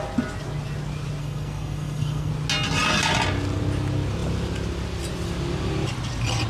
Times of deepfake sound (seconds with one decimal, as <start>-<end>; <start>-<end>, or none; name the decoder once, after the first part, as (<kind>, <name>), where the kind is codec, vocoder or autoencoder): 1.2-2.3 (codec, SNAC)